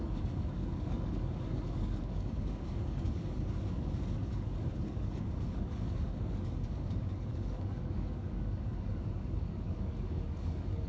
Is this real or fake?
fake